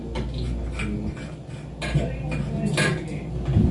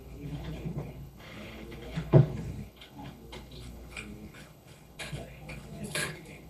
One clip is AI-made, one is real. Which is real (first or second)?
first